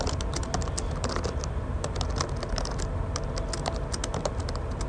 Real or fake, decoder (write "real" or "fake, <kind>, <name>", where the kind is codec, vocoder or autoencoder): real